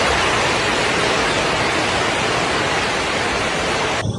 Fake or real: real